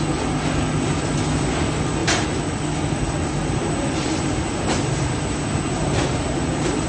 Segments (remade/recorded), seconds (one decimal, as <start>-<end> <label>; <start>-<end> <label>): 0.0-2.0 recorded; 2.0-2.6 remade; 2.6-3.4 recorded; 3.4-6.9 remade